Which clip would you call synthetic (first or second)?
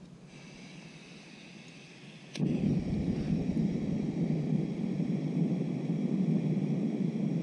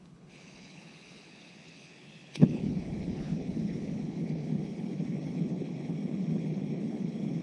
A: second